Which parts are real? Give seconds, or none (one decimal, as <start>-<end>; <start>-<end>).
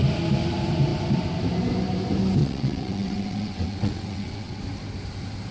0.0-2.4; 4.6-5.5